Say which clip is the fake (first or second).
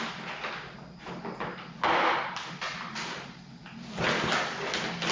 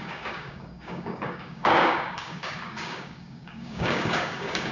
second